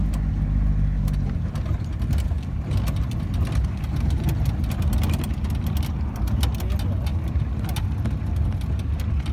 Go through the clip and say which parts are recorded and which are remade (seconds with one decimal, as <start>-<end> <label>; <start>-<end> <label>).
0.0-9.3 recorded